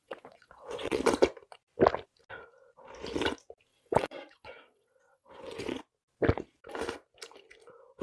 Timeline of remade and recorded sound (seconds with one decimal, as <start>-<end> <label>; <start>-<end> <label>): 0.0-1.0 remade; 1.0-3.7 recorded; 3.7-5.8 remade; 5.8-8.0 recorded